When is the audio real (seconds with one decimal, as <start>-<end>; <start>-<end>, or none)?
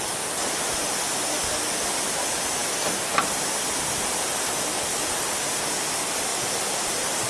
0.0-7.3